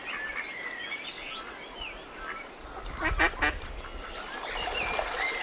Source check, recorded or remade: recorded